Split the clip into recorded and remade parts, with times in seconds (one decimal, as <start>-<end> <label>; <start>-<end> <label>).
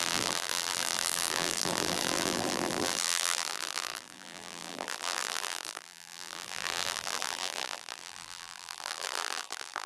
0.0-9.9 remade